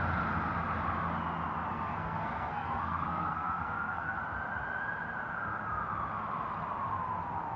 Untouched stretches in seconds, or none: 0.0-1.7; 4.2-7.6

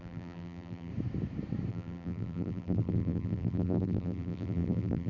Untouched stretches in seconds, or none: 0.9-1.7

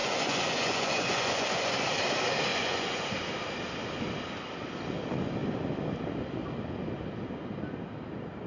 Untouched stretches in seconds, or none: 1.7-2.5; 3.1-8.5